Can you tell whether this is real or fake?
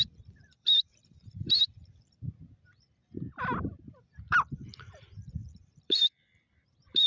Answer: fake